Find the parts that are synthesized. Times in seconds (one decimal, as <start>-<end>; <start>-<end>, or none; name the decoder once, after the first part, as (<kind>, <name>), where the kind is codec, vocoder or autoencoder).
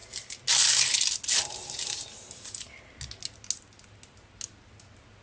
none